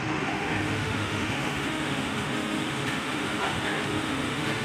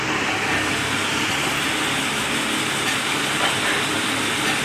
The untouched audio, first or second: second